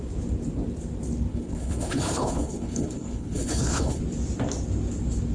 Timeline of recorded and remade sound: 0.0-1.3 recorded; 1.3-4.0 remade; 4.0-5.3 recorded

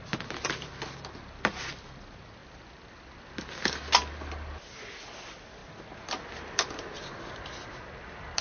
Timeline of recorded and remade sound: 0.0-8.4 recorded

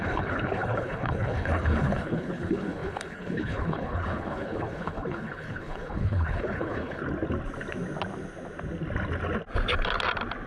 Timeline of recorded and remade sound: 0.0-7.0 remade; 7.0-10.5 recorded